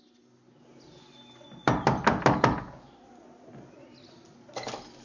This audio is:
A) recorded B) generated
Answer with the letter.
A